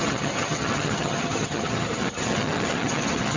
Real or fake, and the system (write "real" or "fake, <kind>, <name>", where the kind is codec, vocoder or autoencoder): fake, vocoder, HiFi-GAN